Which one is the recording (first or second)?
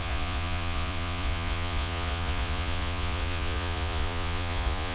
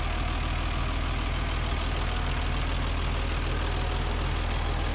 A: second